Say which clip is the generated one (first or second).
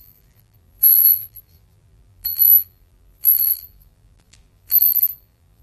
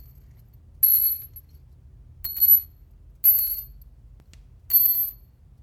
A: first